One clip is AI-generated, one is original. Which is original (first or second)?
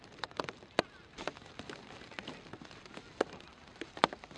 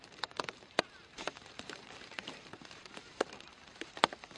first